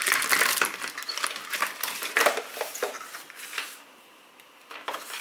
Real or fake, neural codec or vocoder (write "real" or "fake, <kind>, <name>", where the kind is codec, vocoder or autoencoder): fake, vocoder, BigVGAN v2